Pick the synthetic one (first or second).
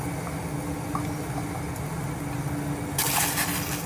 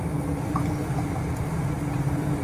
second